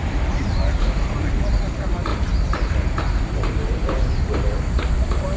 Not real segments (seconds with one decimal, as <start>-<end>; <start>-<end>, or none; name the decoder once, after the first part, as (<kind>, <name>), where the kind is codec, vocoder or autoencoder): 0.0-5.4 (vocoder, BigVGAN v2)